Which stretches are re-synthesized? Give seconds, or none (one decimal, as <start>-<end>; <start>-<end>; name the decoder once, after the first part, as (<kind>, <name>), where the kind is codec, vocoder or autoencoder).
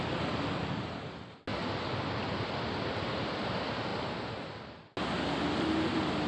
none